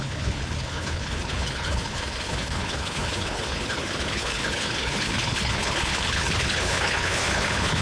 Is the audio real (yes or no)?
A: no